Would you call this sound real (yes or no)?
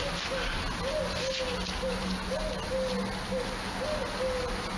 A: yes